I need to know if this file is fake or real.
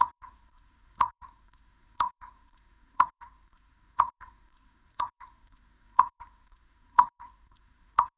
fake